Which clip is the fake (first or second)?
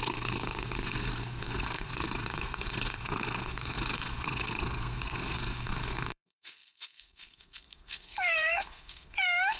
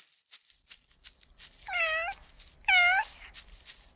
first